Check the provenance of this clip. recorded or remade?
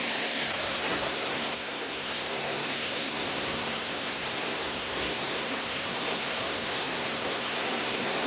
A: remade